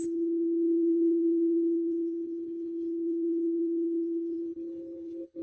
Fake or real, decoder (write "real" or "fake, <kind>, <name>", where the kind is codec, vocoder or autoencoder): fake, codec, HILCodec